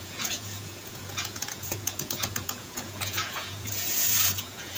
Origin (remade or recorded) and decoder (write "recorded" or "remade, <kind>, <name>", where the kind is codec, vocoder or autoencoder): remade, vocoder, Vocos